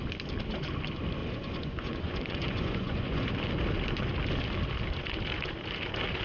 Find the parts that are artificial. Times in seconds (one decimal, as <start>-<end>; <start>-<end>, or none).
1.2-3.3